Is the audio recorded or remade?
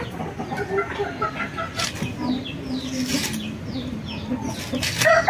recorded